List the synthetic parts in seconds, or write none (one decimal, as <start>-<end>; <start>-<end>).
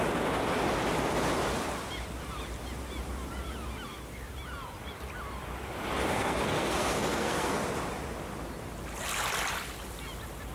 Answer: 6.1-7.6